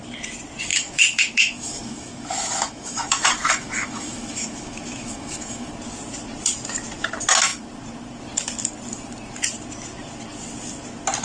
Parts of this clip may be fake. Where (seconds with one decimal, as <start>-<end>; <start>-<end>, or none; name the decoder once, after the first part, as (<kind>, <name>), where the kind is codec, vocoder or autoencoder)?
0.7-5.7 (autoencoder, DAC-VAE)